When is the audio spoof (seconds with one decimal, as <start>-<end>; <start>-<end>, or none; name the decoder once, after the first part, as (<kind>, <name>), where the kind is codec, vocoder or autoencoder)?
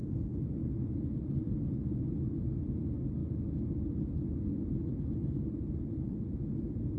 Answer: none